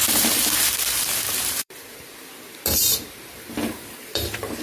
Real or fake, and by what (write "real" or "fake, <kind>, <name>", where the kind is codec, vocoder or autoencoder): fake, vocoder, BigVGAN v2